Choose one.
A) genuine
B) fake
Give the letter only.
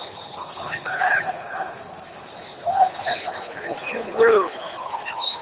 B